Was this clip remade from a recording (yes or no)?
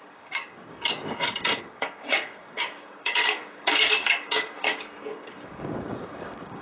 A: yes